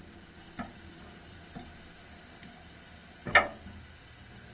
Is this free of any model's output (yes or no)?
yes